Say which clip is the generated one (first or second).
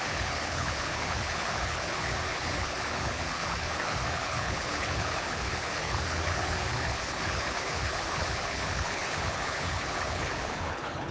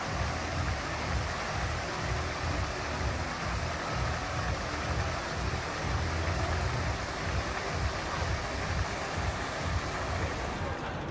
first